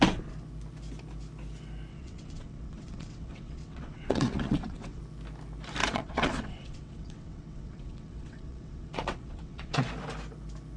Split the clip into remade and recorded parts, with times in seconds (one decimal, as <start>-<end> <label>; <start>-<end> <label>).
0.0-1.9 recorded; 1.9-5.0 remade; 5.0-5.8 recorded; 5.8-9.9 remade; 9.9-10.8 recorded